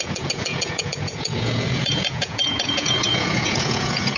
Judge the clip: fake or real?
fake